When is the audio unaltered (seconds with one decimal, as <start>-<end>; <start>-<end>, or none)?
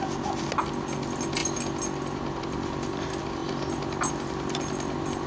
0.0-5.3